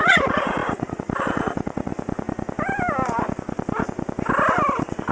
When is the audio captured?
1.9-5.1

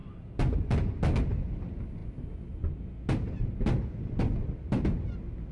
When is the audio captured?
0.0-5.5